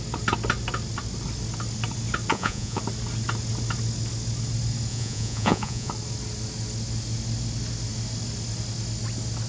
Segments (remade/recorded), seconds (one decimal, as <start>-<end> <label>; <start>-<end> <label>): 0.0-2.3 recorded; 2.3-2.8 remade; 2.8-4.9 recorded; 4.9-5.9 remade; 5.9-9.5 recorded